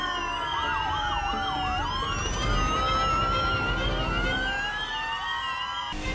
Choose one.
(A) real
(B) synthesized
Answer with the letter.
A